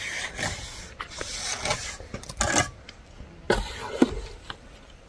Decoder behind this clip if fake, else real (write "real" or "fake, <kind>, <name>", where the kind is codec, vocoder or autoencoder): real